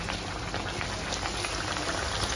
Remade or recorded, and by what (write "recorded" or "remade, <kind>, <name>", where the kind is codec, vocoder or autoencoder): recorded